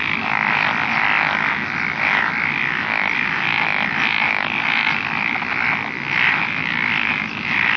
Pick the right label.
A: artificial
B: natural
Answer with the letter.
B